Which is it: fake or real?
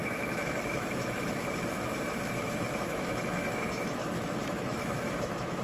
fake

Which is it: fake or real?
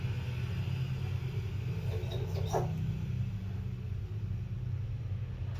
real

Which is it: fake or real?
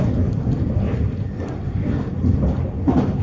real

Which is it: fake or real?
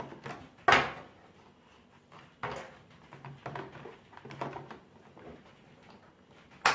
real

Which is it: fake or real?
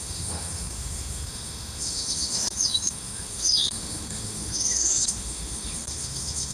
fake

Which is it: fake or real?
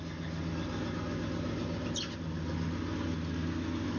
real